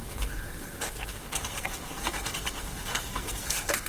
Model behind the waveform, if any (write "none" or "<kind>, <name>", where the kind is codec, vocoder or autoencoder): codec, SNAC